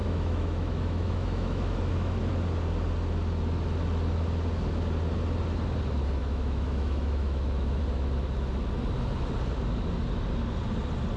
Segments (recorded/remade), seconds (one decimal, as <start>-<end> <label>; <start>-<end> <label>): 0.0-2.2 remade; 2.2-6.2 recorded; 6.2-7.8 remade; 7.8-11.2 recorded